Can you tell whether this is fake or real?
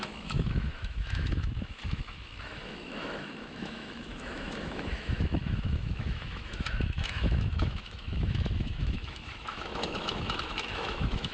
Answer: fake